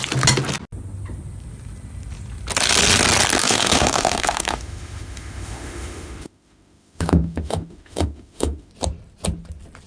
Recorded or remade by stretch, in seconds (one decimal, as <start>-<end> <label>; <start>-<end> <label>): 0.0-3.4 recorded; 3.4-8.7 remade; 8.7-9.9 recorded

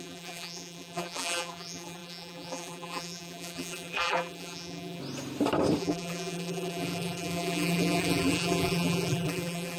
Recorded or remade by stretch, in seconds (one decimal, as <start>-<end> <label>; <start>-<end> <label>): 0.0-5.0 remade; 5.0-5.8 recorded; 5.8-9.8 remade